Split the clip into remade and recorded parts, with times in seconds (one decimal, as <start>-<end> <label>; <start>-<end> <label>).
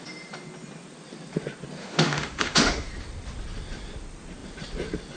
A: 0.0-1.8 recorded; 1.8-2.9 remade; 2.9-5.2 recorded